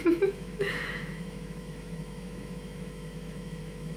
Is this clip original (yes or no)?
no